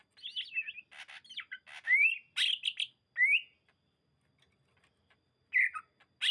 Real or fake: real